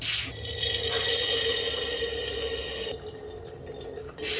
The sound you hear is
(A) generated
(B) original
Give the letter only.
B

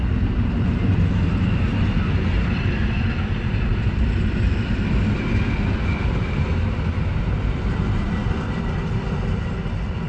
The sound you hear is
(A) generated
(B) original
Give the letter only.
B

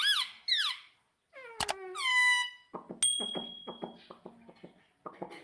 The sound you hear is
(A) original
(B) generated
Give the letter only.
A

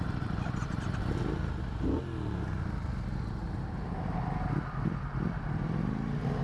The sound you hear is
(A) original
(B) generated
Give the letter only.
A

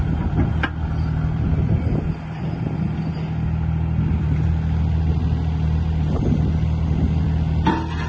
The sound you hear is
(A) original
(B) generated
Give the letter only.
A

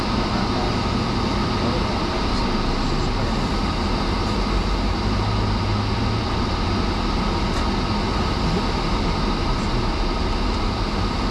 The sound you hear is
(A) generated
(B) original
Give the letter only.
B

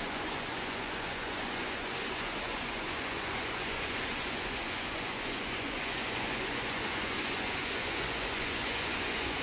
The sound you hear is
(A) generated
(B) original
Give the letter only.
A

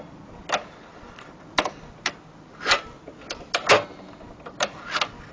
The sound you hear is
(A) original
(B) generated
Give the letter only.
A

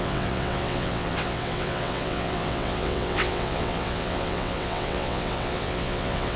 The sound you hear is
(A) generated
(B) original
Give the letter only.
A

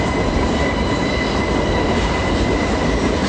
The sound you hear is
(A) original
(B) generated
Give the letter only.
A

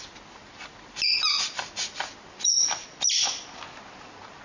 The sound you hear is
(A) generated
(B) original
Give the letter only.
B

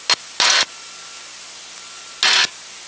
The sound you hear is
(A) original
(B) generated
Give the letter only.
A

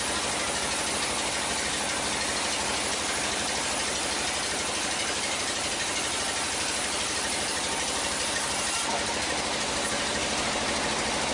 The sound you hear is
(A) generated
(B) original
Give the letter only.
B